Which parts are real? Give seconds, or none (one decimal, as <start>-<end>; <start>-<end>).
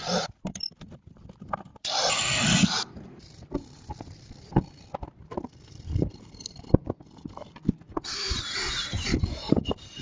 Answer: 0.0-10.0